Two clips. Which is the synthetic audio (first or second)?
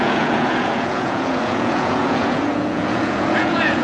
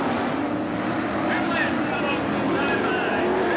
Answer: first